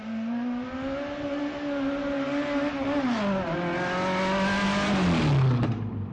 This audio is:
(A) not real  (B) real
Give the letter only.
B